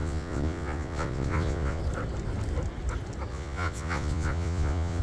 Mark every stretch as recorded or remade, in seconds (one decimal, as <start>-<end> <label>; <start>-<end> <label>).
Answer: 0.0-1.8 remade; 1.8-3.3 recorded; 3.3-5.0 remade